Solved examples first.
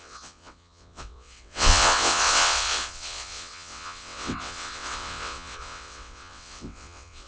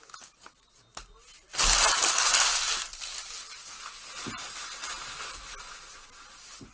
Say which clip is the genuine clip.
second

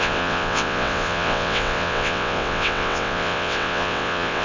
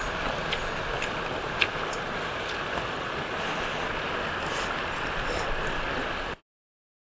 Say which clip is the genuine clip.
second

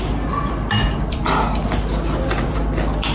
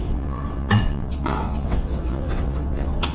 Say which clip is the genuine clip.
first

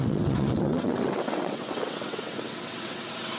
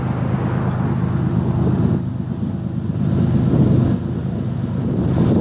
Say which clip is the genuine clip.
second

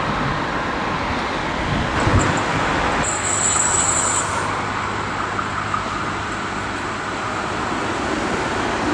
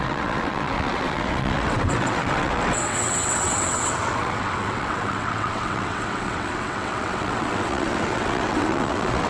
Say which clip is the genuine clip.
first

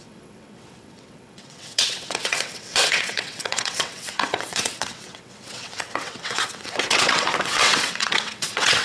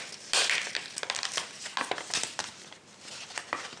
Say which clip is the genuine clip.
second